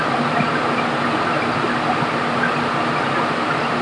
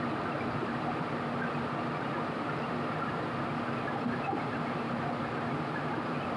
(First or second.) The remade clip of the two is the second